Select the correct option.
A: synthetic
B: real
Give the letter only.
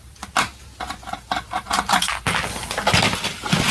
B